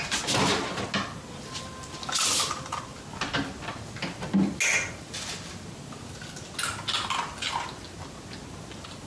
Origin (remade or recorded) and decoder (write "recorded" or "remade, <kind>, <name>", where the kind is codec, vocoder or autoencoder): recorded